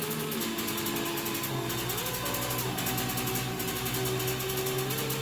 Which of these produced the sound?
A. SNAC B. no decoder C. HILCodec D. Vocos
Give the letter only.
B